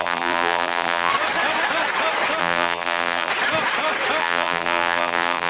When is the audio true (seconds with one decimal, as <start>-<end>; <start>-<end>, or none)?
1.1-2.4; 3.3-4.2